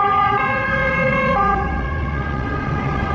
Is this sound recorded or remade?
remade